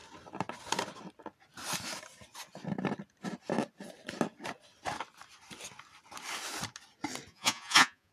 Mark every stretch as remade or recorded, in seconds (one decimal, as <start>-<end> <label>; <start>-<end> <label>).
0.0-7.3 recorded; 7.3-8.1 remade